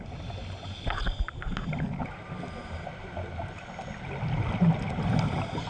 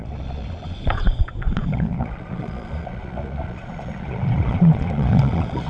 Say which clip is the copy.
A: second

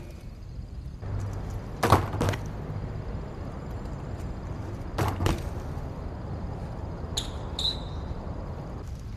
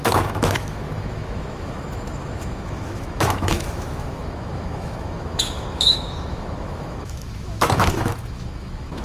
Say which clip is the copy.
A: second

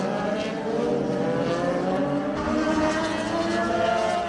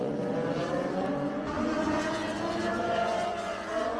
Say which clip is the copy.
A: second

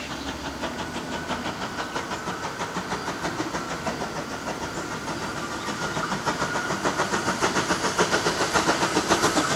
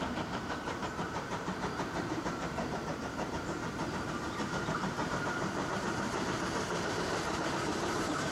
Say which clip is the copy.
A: second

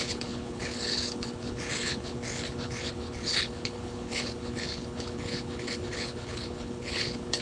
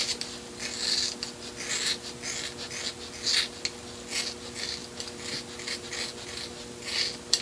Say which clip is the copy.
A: first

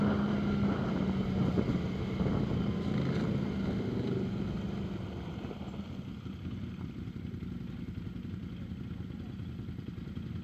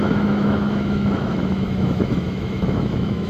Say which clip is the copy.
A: second